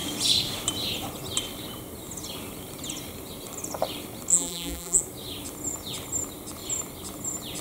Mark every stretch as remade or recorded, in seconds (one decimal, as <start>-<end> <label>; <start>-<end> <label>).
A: 0.0-4.3 recorded; 4.3-5.0 remade; 5.0-7.6 recorded